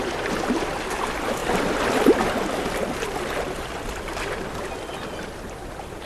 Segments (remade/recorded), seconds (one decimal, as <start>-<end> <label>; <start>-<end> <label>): 0.0-6.1 recorded

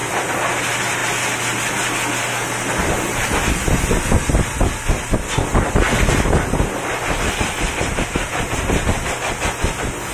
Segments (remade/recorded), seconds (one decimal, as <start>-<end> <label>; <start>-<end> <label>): 0.0-0.6 remade; 0.6-7.4 recorded; 7.4-8.6 remade; 8.6-10.1 recorded

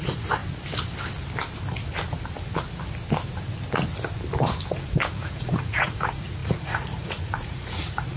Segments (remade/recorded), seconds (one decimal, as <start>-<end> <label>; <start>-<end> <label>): 0.0-0.4 remade; 0.4-5.3 recorded; 5.3-8.2 remade

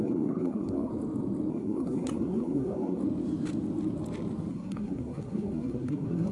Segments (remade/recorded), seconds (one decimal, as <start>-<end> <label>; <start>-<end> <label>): 0.0-0.9 remade; 0.9-1.5 recorded; 1.5-3.0 remade; 3.0-4.5 recorded; 4.5-6.3 remade

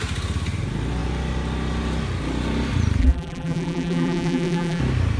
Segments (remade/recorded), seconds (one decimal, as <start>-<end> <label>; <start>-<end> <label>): 0.0-3.0 recorded; 3.0-4.8 remade; 4.8-5.2 recorded